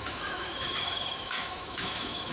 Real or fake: fake